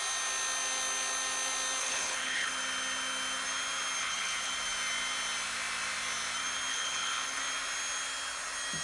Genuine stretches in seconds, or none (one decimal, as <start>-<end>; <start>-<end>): 0.0-1.8; 2.5-4.0; 4.5-6.7; 7.4-8.8